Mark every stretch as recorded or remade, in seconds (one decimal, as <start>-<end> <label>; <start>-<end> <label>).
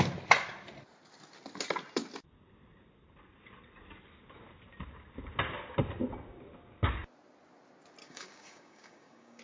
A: 0.0-8.0 recorded; 8.0-9.4 remade